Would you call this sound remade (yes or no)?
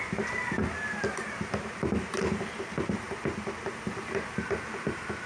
no